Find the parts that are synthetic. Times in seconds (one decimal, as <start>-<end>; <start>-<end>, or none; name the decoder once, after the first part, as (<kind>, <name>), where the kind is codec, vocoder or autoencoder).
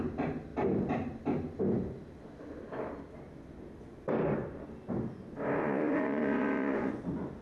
5.6-7.0 (vocoder, Vocos)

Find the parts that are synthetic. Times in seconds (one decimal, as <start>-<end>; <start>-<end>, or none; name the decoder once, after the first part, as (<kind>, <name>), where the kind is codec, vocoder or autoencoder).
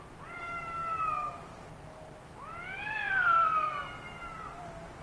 none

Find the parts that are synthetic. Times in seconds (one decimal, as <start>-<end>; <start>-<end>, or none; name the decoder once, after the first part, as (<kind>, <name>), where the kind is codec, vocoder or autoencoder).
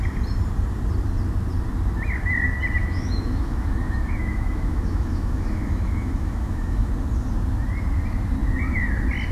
2.8-6.9 (autoencoder, DAC-VAE)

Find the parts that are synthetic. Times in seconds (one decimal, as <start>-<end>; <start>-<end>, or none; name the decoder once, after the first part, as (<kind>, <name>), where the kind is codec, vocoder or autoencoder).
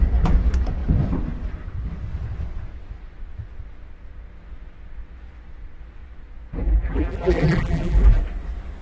6.6-8.2 (vocoder, BigVGAN v2)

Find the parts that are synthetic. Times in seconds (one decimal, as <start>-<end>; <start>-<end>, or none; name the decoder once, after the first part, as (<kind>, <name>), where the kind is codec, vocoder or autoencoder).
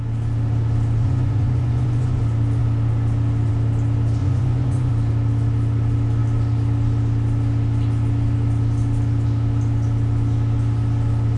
1.0-2.2 (vocoder, Vocos); 4.2-4.9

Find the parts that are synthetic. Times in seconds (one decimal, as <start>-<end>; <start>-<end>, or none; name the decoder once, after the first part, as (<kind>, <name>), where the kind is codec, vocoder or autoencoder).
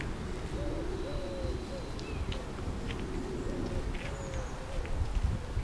none